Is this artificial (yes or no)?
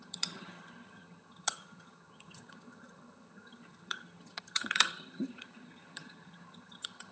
yes